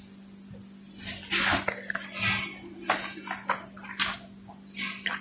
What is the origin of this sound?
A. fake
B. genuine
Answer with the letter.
B